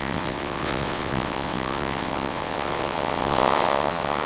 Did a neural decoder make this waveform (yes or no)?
yes